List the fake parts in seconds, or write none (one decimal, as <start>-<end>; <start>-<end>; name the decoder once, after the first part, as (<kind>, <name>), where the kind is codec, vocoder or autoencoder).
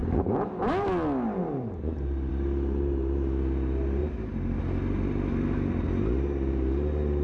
0.0-0.7 (vocoder, BigVGAN v2); 1.4-2.3; 4.0-4.6